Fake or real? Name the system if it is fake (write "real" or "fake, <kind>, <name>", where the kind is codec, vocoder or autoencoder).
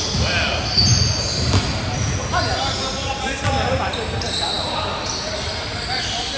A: real